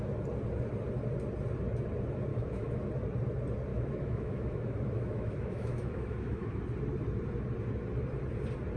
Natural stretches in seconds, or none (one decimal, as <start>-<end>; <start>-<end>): 0.0-2.3; 2.8-3.7; 6.6-8.8